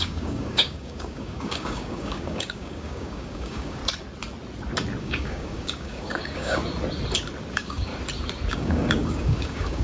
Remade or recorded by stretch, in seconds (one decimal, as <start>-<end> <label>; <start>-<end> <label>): 0.0-3.8 remade; 3.8-5.0 recorded; 5.0-6.6 remade; 6.6-7.5 recorded; 7.5-7.9 remade; 7.9-8.5 recorded; 8.5-9.8 remade